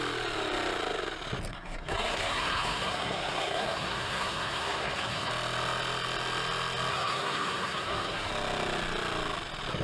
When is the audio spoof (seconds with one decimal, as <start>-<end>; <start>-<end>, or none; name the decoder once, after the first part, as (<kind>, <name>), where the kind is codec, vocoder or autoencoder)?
1.5-5.3 (codec, SNAC); 6.9-8.3